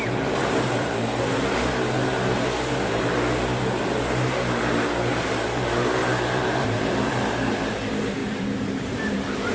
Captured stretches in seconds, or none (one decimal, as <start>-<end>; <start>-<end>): 0.0-0.4; 1.2-6.0; 7.1-8.2